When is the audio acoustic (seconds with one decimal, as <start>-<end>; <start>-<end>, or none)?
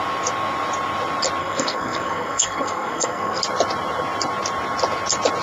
0.0-1.4; 3.4-5.4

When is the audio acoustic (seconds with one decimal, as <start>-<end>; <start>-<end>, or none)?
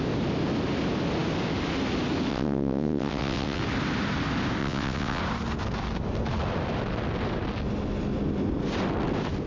0.0-2.3; 3.6-4.6; 5.2-9.5